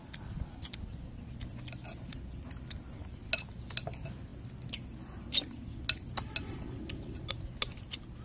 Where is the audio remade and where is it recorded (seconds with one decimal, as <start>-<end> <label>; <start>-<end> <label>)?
0.0-8.2 recorded